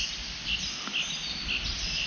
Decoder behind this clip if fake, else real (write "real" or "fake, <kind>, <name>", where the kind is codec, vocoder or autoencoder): real